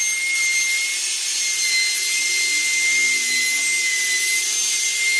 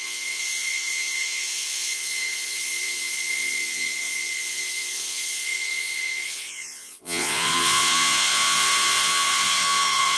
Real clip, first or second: first